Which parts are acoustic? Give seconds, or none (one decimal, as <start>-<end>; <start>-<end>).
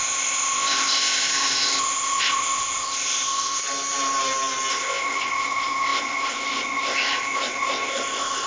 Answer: 3.6-4.7